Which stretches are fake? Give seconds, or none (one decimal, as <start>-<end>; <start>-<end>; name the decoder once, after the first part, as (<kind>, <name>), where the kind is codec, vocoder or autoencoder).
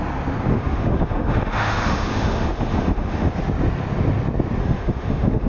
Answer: 0.5-3.3 (autoencoder, DAC-VAE); 4.6-5.5